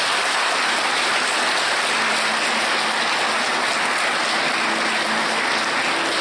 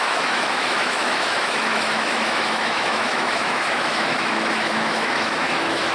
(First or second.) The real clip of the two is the first